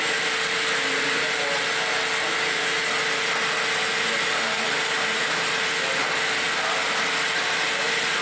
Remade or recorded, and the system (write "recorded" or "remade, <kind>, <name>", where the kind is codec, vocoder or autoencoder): recorded